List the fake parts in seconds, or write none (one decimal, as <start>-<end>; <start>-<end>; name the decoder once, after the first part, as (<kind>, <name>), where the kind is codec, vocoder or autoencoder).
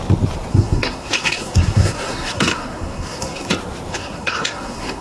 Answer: 0.5-3.5 (codec, SNAC); 3.9-5.0